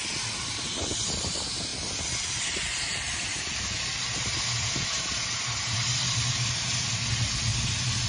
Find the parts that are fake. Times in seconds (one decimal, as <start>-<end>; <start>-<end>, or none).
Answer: none